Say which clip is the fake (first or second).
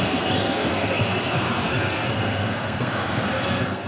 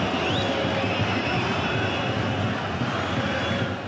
first